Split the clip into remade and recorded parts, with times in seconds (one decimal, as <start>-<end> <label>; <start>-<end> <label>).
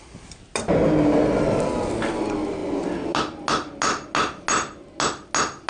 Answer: 0.0-5.7 recorded